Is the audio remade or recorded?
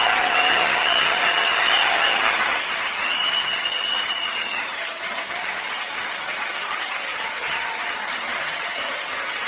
remade